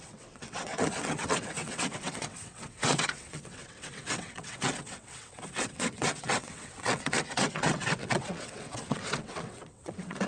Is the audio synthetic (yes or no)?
yes